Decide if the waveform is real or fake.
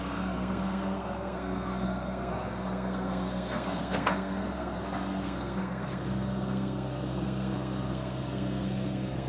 fake